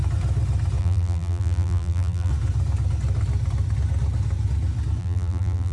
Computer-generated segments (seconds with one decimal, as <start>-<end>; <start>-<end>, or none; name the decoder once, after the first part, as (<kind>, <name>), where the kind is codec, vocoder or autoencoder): 0.8-2.3 (vocoder, BigVGAN v2); 5.0-5.7